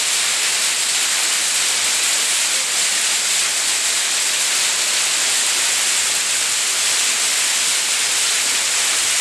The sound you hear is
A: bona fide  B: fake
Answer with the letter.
A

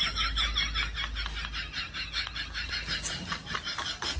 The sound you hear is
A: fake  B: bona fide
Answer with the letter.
B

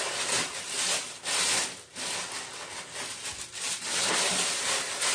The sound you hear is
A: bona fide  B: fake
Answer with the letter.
A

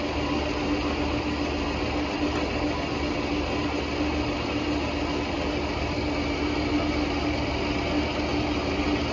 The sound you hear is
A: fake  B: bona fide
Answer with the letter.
B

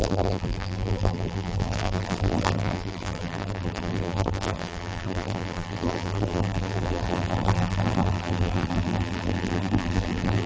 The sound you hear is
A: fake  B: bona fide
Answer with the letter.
A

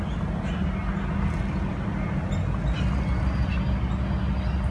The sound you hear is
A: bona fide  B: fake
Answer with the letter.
A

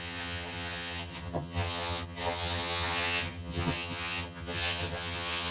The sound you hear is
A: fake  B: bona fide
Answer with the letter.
A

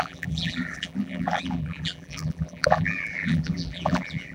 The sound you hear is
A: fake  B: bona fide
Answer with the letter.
A